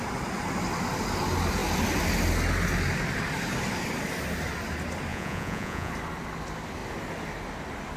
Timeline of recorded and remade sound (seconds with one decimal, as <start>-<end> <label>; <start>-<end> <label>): 0.0-5.1 recorded; 5.1-5.9 remade; 5.9-8.0 recorded